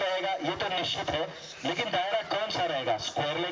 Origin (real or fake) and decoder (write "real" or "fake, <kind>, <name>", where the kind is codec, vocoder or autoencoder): real